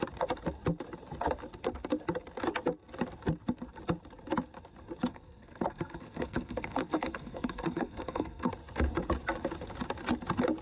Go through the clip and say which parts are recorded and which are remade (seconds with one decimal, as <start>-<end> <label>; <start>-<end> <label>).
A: 0.0-5.1 recorded; 5.1-8.5 remade; 8.5-10.6 recorded